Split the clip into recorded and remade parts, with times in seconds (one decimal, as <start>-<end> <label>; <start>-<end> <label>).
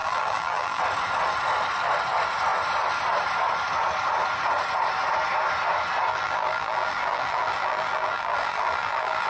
0.0-0.8 remade; 0.8-6.1 recorded; 6.1-9.3 remade